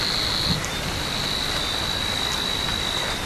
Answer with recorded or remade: recorded